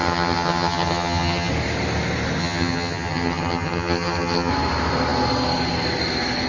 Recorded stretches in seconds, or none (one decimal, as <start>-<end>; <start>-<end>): 1.5-2.4; 4.5-6.5